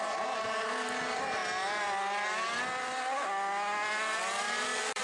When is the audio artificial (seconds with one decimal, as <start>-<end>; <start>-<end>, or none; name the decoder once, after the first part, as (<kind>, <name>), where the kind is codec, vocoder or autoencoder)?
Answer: 0.0-1.4 (vocoder, BigVGAN v2); 4.4-5.0